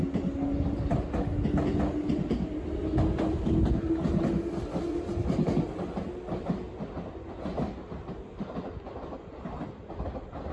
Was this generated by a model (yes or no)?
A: no